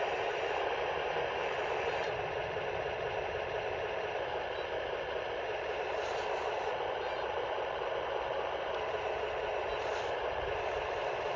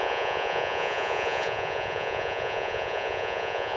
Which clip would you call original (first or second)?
first